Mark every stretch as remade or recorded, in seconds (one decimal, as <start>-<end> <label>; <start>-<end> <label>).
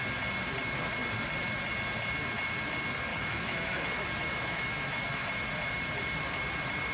0.0-3.1 recorded; 3.1-5.3 remade; 5.3-6.9 recorded